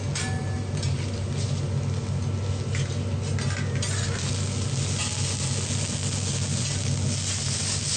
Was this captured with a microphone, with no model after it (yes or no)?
yes